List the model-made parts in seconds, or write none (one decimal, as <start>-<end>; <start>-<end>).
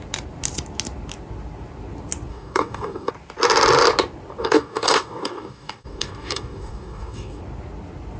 2.3-3.1; 4.4-7.4